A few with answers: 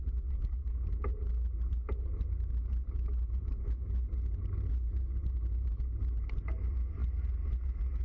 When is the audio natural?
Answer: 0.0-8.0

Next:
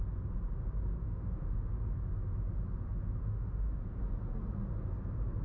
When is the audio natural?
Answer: 0.0-1.0; 1.7-3.2; 3.8-5.4

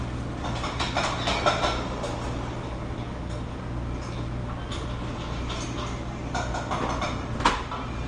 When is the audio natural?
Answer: 0.0-8.1

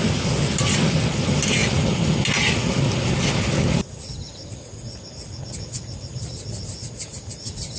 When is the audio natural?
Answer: 0.0-7.8

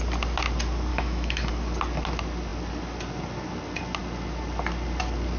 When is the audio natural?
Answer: 0.0-0.9; 1.5-5.4